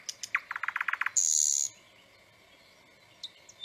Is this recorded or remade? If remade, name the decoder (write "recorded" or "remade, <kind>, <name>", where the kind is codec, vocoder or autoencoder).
recorded